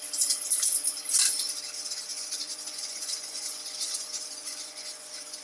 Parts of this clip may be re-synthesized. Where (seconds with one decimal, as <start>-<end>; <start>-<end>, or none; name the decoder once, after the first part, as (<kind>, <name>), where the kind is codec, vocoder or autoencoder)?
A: 2.1-5.4 (vocoder, Vocos)